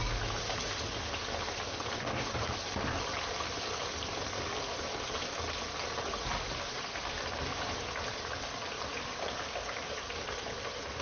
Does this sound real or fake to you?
real